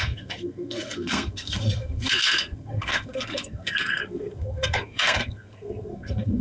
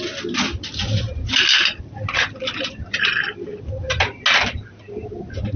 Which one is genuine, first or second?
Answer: second